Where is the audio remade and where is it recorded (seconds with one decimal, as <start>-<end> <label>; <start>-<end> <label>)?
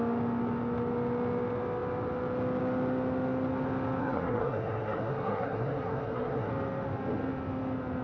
0.0-4.0 recorded; 4.0-6.5 remade; 6.5-8.0 recorded